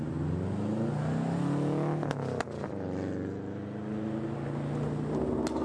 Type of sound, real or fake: real